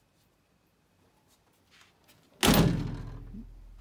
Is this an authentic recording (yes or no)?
yes